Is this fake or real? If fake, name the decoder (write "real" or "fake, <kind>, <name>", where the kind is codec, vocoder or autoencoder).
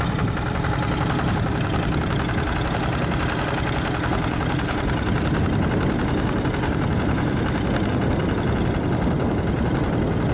real